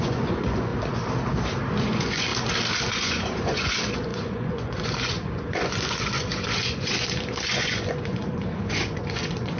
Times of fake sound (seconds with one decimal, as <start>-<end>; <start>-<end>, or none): 0.0-0.7; 1.8-2.3; 2.8-9.6